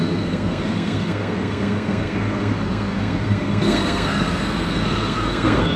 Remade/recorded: remade